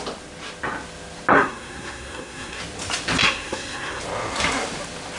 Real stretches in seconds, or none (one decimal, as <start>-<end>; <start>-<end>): 0.0-1.3; 2.6-3.2; 4.0-5.2